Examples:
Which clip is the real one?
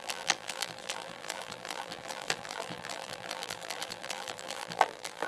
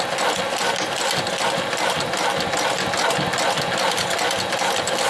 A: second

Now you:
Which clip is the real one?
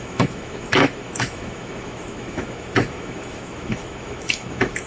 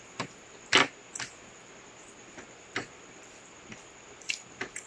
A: second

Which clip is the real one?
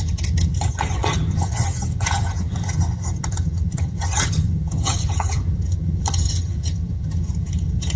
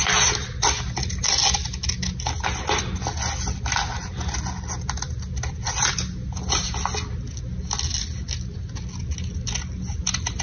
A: second